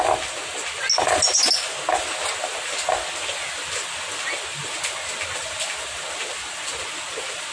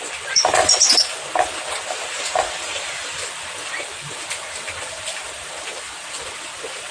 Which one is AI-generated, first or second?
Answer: second